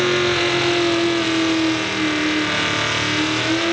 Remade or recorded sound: recorded